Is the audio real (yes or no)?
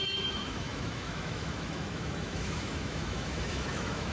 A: no